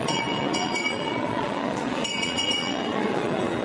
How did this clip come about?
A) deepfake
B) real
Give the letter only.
A